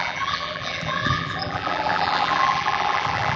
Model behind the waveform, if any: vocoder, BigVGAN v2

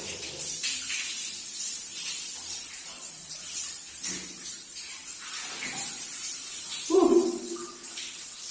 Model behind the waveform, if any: vocoder, BigVGAN v2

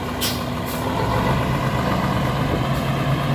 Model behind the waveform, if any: none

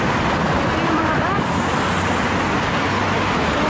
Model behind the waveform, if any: none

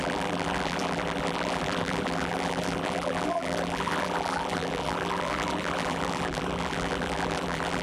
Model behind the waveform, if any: vocoder, BigVGAN v2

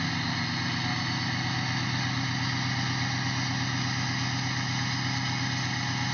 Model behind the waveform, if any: none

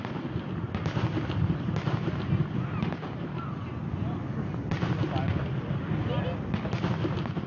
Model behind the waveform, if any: none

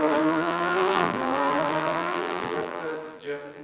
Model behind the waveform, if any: vocoder, BigVGAN v2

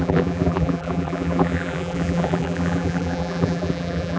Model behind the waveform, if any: vocoder, BigVGAN v2